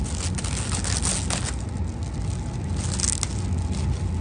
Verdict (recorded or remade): recorded